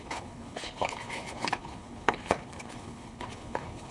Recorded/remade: remade